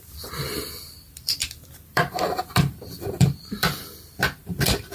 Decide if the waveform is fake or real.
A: fake